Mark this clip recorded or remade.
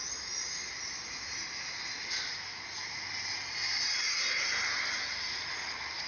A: recorded